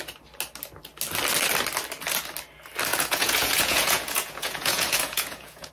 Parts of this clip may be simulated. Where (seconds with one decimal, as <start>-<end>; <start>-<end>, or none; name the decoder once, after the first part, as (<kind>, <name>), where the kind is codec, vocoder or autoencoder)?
2.9-5.7 (vocoder, Vocos)